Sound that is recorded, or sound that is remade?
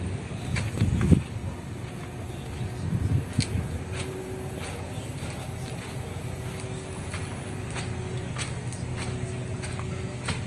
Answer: recorded